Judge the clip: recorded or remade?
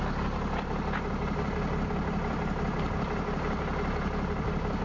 recorded